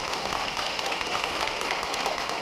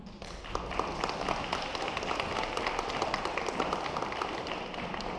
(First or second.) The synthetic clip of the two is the first